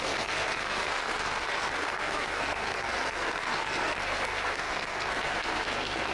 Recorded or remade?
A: remade